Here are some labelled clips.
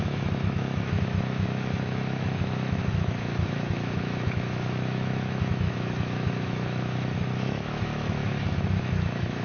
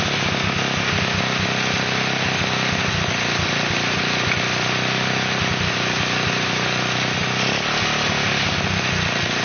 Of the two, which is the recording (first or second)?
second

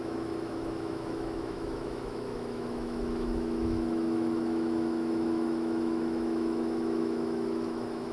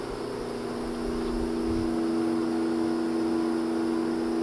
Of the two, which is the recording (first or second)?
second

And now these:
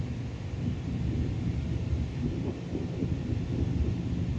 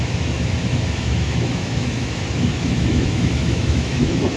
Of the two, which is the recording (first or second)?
first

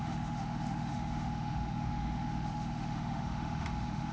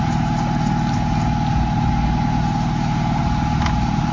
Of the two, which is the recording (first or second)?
second